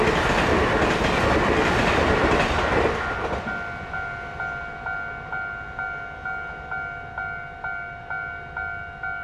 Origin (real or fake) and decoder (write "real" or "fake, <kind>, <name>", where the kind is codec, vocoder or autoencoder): real